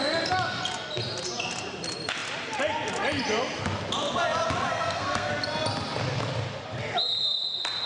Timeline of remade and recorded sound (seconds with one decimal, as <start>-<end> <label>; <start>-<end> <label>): 0.0-4.7 recorded; 4.7-5.3 remade; 5.3-7.9 recorded